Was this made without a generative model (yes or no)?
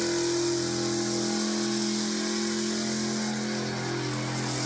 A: yes